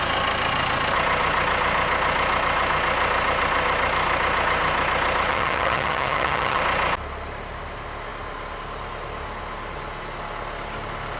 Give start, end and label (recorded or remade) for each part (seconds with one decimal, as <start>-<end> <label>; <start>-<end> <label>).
0.0-5.3 recorded; 5.3-6.6 remade; 6.6-11.2 recorded